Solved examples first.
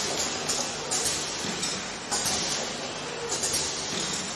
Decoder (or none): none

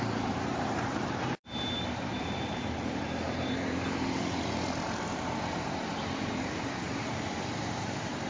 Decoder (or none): vocoder, BigVGAN v2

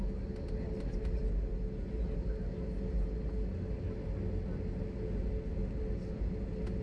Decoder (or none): none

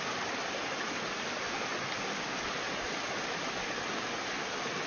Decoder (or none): none